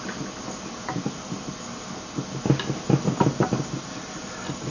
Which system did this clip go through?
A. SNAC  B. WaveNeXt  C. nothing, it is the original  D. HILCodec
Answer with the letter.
C